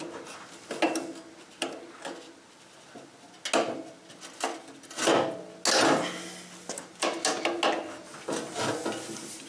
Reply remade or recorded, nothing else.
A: recorded